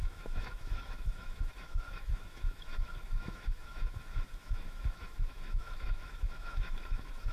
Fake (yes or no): yes